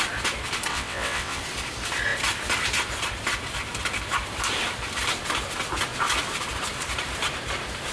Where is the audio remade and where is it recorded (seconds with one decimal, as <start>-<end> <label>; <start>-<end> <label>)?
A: 0.0-0.7 recorded; 0.7-1.4 remade; 1.4-7.9 recorded